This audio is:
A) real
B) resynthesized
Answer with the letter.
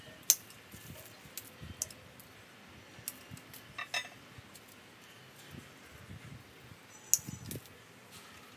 A